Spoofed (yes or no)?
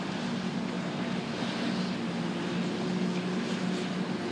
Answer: no